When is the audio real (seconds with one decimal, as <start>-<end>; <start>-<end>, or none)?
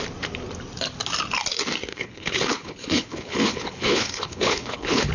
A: 0.0-1.9